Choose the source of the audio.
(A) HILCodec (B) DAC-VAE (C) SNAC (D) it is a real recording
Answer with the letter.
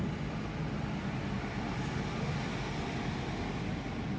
D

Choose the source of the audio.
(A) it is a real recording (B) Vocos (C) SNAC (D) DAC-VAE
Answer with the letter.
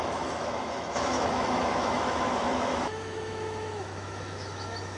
D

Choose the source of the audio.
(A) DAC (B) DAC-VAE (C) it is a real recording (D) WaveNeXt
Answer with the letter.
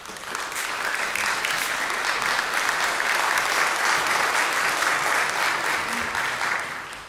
C